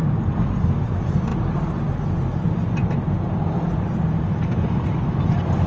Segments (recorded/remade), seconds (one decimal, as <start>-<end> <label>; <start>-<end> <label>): 0.0-5.7 recorded